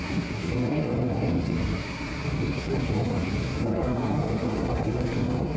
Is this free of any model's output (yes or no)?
no